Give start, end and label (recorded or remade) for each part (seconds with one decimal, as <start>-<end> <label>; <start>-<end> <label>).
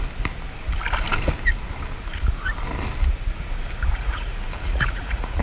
0.0-3.9 recorded; 3.9-5.4 remade